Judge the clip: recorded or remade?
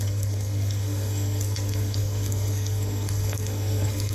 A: remade